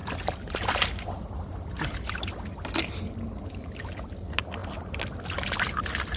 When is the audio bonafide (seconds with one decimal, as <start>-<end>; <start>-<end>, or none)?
0.0-6.2